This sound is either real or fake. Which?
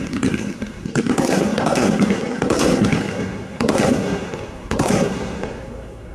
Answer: fake